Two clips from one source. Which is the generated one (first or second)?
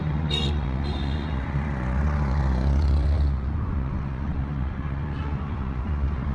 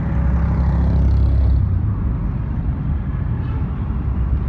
first